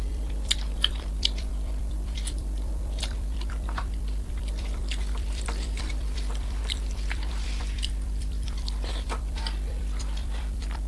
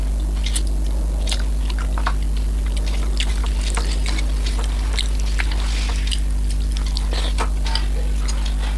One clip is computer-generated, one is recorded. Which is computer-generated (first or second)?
first